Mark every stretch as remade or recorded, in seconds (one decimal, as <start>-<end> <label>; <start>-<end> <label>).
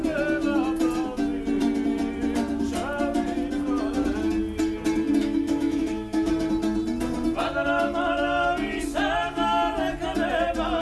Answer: 0.0-5.2 recorded; 5.2-6.3 remade; 6.3-10.8 recorded